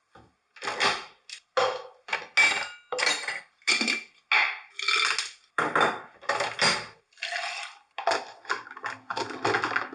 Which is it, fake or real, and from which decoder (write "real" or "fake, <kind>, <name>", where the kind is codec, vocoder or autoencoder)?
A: real